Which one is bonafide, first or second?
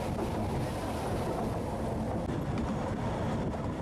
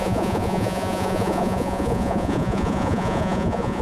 first